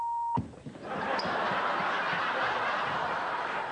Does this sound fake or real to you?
real